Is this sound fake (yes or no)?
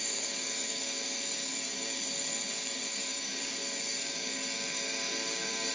yes